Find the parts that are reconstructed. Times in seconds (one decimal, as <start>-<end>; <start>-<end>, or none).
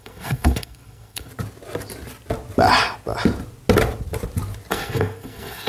0.0-1.3; 4.7-5.7